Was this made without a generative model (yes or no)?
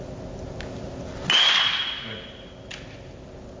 yes